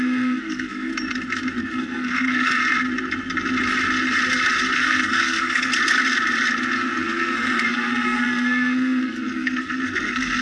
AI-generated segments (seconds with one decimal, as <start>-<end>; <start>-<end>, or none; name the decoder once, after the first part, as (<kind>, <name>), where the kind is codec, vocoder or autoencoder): 0.0-0.9 (codec, SNAC); 1.6-2.6; 4.7-5.7; 7.0-10.4